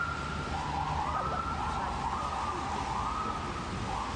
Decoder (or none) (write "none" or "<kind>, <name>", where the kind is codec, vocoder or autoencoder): none